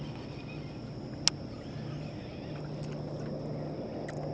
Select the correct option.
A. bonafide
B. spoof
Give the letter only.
A